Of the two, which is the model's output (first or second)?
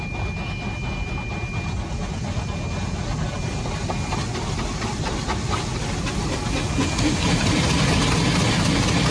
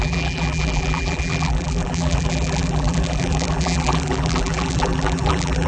second